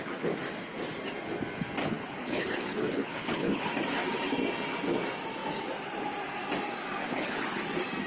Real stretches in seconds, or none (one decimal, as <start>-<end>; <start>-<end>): 0.0-1.8; 3.7-7.0; 7.6-8.1